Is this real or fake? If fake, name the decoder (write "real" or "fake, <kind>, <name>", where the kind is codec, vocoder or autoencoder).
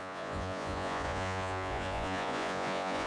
fake, vocoder, Vocos